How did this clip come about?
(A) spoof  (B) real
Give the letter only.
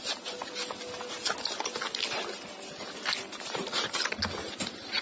B